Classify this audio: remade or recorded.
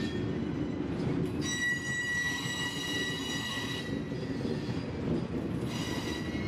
recorded